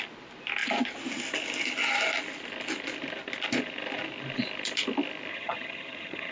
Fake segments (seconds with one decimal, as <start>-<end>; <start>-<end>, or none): 5.3-6.3